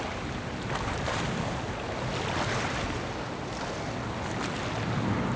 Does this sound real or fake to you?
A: real